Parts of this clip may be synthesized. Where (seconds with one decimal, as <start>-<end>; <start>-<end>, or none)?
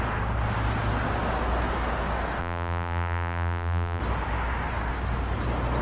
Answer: 2.4-4.0